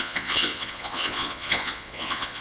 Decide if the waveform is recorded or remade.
remade